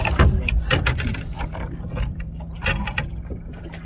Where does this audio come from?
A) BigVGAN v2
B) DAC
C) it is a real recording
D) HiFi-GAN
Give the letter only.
A